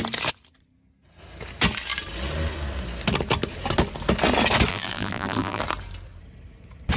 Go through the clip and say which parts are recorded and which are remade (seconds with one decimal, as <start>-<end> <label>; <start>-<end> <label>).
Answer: 0.0-4.7 recorded; 4.7-5.6 remade; 5.6-7.0 recorded